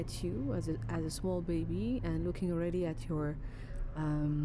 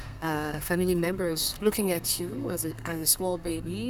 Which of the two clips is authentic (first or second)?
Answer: first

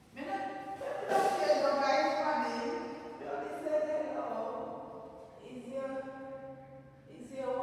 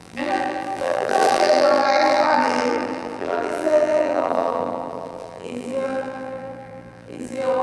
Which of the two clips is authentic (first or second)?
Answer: first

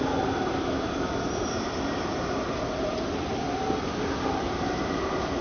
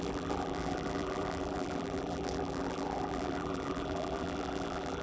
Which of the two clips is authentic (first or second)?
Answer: first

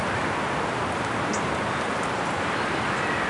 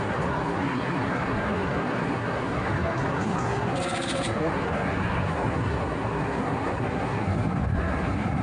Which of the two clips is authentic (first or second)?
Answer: first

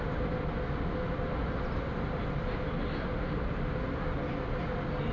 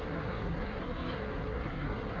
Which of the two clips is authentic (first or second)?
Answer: first